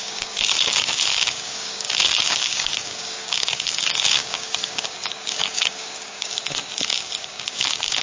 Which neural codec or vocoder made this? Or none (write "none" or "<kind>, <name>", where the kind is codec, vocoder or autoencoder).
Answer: codec, DAC